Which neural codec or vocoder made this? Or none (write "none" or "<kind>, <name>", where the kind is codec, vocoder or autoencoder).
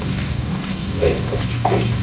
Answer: codec, DAC